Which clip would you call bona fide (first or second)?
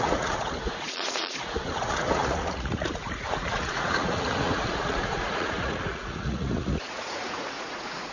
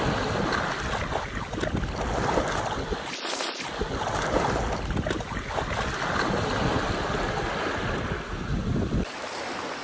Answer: second